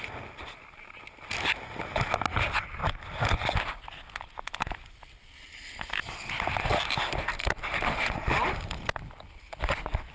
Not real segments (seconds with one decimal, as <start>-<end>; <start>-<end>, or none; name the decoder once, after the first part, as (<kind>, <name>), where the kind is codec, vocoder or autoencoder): none